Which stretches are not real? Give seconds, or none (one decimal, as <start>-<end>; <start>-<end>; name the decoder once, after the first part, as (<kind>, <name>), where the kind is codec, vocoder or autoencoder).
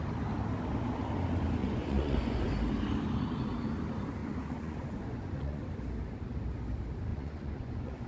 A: 1.6-2.5 (vocoder, Vocos); 4.2-5.6; 7.1-8.1